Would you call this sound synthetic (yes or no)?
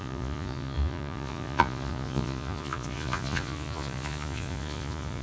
yes